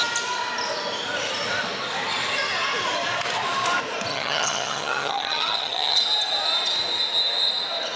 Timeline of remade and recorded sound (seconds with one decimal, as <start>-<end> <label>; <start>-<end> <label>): 0.0-4.1 recorded; 4.1-6.0 remade; 6.0-8.0 recorded